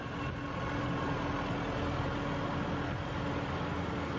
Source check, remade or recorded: recorded